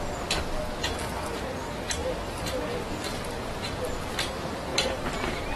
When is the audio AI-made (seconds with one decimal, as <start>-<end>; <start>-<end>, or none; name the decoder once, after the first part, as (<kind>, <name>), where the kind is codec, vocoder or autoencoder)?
2.0-4.0 (vocoder, BigVGAN v2); 4.7-5.6